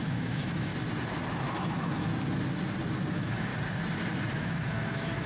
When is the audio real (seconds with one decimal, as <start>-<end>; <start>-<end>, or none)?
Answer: 0.7-1.5; 2.1-3.1; 3.5-4.3